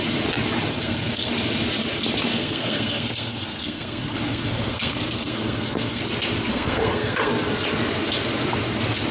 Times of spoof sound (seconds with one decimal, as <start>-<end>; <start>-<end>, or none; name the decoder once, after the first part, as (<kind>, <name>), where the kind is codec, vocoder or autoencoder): 0.7-1.3 (codec, SNAC); 2.3-6.0; 6.5-7.3